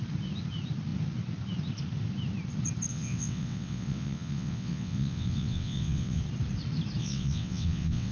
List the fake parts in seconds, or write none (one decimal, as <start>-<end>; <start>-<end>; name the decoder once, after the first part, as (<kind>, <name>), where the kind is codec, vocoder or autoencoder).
2.9-6.2 (vocoder, WaveNeXt); 7.0-8.1